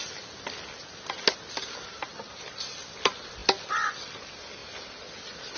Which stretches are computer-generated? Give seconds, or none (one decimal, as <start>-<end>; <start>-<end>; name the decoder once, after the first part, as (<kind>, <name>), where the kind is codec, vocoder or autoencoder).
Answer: 2.1-2.9 (vocoder, BigVGAN v2); 3.4-3.9; 4.6-5.6